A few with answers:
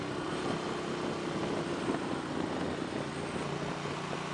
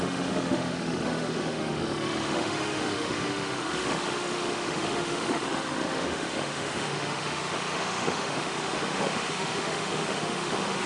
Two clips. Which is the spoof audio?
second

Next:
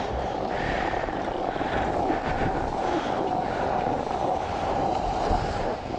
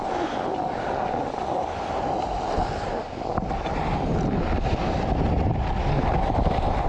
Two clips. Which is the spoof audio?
first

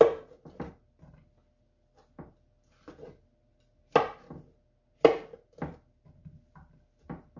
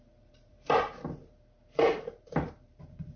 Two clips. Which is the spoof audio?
second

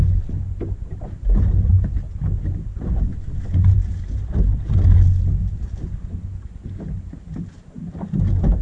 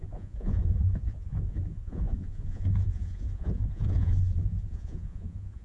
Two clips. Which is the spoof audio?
second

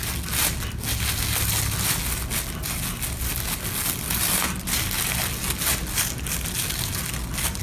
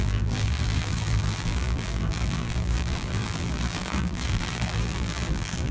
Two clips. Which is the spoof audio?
second